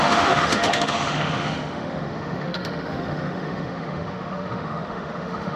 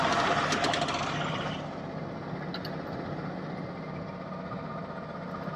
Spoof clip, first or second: first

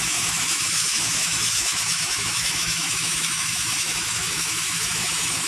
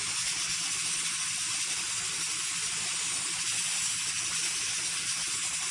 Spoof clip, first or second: first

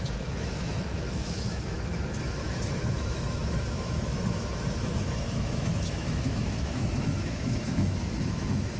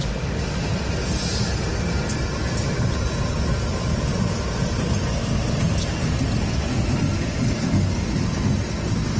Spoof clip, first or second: first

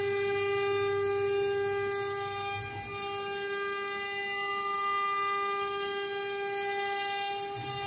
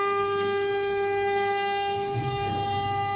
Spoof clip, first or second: second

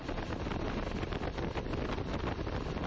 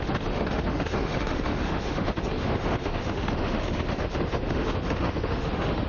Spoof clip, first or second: second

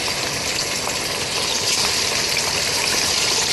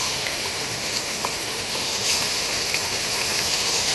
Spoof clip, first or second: second